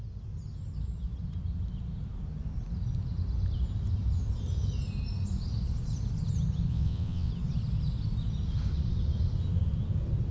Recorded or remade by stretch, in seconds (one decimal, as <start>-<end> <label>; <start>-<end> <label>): 0.0-6.7 recorded; 6.7-7.3 remade; 7.3-10.3 recorded